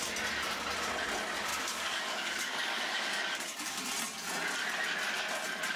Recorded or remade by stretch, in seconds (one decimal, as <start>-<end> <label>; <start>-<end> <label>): 0.0-1.5 recorded; 1.5-3.8 remade; 3.8-5.8 recorded